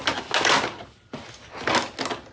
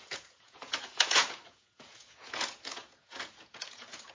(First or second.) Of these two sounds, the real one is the first